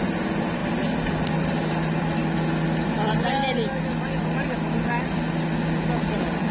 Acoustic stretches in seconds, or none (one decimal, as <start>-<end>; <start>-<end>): 0.0-6.5